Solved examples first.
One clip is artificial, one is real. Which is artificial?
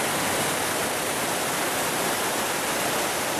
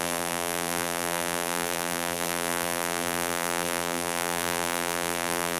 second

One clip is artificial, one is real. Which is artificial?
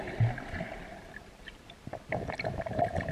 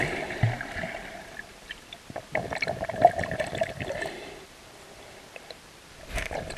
second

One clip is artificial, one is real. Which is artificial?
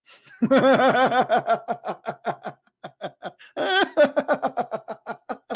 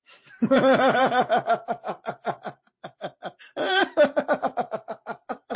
second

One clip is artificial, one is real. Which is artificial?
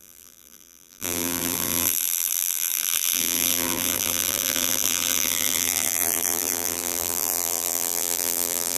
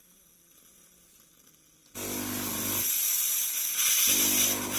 first